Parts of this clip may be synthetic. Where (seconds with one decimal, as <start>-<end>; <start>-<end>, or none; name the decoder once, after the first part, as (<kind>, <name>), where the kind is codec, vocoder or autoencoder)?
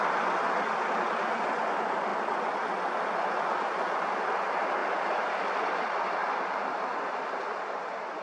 4.8-5.4 (vocoder, BigVGAN v2); 6.2-8.2